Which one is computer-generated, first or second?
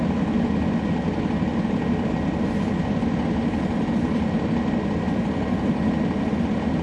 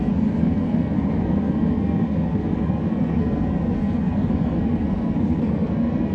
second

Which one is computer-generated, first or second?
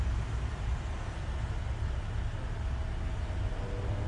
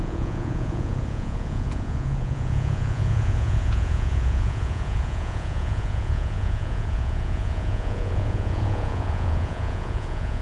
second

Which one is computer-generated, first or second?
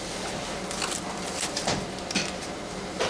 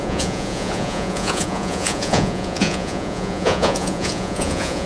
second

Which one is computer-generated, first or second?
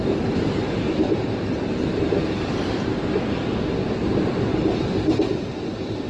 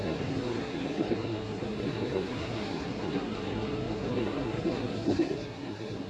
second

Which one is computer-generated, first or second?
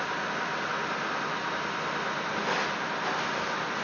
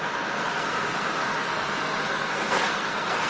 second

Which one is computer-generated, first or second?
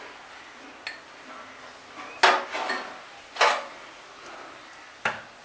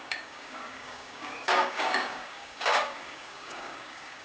second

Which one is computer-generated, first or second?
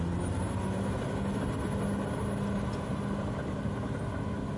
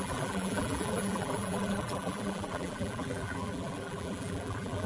second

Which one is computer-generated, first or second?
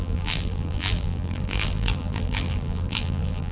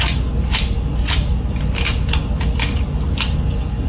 first